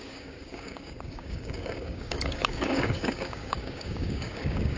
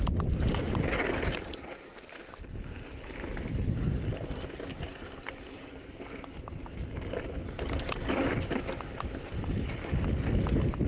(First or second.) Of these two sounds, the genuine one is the second